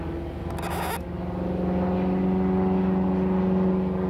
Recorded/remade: recorded